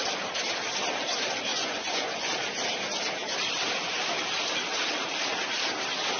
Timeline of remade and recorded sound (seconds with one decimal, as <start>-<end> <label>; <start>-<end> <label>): 0.0-1.5 recorded; 1.5-2.3 remade; 2.3-6.2 recorded